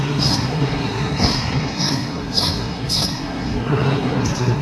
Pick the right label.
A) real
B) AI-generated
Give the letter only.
B